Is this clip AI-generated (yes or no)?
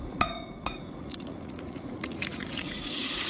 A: yes